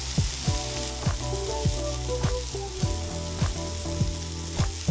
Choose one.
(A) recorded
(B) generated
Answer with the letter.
A